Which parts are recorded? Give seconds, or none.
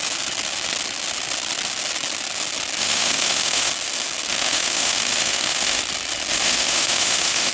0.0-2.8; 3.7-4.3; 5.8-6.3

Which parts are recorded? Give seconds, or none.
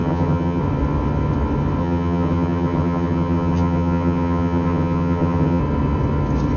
0.6-1.8; 5.6-6.6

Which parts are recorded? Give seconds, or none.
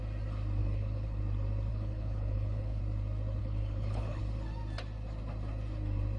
0.0-0.6; 1.2-1.7; 2.8-3.4; 4.2-6.2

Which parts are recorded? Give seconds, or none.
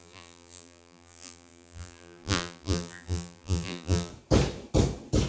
4.1-5.3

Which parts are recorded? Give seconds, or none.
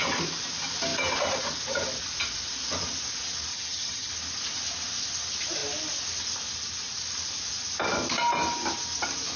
0.0-3.5; 4.1-9.4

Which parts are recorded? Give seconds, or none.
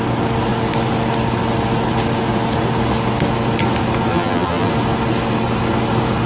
0.0-4.1; 4.7-6.3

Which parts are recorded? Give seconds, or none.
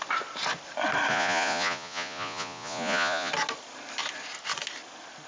0.0-1.1; 3.3-5.3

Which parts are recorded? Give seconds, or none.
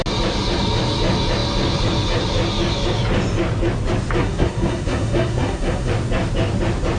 0.0-4.2; 5.9-7.0